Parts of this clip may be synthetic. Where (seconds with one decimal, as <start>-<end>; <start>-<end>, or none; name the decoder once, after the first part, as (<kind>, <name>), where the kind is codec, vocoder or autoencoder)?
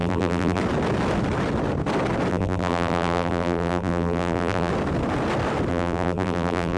0.0-0.6 (vocoder, BigVGAN v2); 2.3-4.7; 5.7-6.8